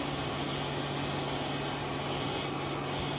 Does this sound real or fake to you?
real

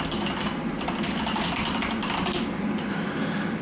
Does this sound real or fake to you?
real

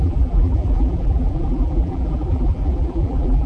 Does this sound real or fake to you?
fake